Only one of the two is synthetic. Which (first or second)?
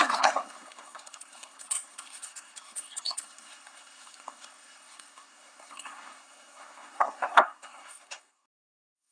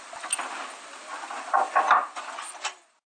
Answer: first